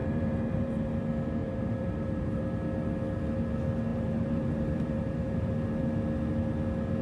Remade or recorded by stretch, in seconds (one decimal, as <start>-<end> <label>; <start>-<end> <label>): 0.0-1.0 remade; 1.0-1.4 recorded; 1.4-2.4 remade; 2.4-3.9 recorded; 3.9-5.5 remade; 5.5-7.0 recorded